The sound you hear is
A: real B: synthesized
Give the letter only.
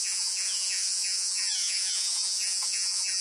B